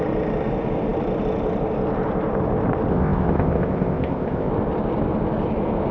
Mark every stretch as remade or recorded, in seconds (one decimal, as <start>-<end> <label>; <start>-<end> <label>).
0.0-2.9 recorded; 2.9-4.5 remade; 4.5-5.9 recorded